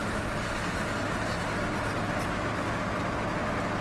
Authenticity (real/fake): real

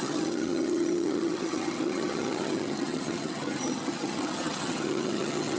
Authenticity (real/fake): fake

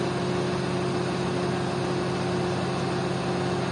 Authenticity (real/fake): real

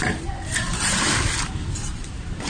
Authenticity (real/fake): fake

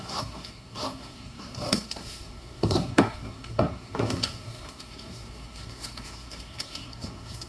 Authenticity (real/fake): fake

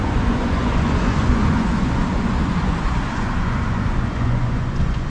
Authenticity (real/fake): fake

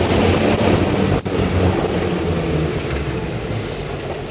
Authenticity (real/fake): real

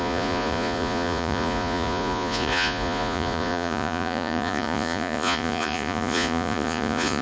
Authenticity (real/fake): fake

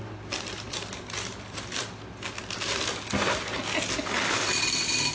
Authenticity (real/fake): real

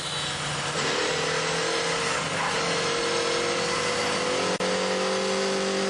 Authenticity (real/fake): real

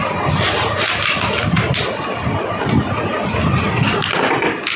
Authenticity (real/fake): real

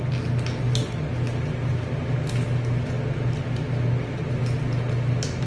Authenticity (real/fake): real